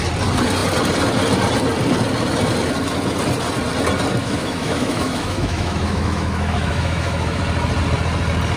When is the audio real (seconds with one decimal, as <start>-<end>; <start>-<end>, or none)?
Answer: 0.0-4.2; 7.4-8.6